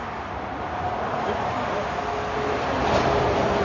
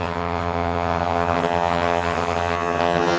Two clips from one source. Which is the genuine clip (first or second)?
first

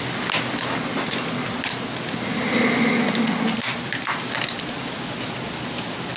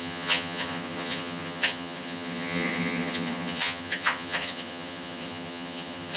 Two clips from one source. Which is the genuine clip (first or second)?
first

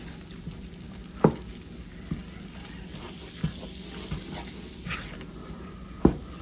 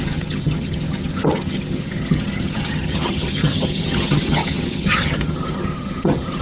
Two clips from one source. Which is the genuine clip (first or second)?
first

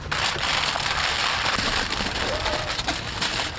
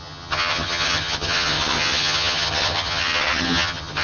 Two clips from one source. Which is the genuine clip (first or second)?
first